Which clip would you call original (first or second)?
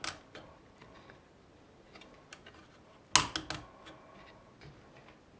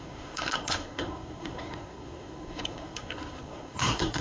first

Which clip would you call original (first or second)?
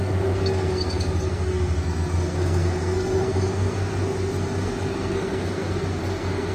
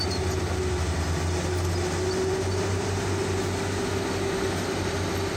second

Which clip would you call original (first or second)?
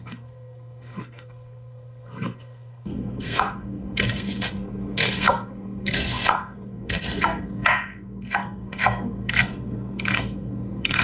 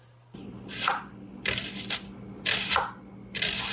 second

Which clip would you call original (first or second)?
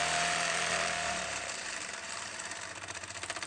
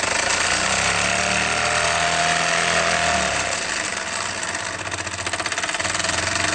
second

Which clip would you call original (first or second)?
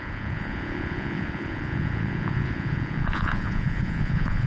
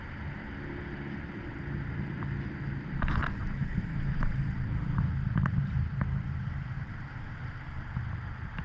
second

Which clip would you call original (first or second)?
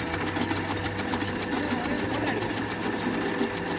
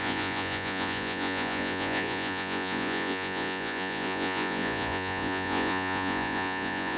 first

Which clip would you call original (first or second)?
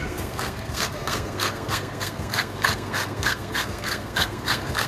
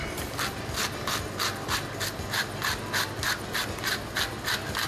second